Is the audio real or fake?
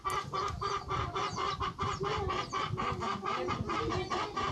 real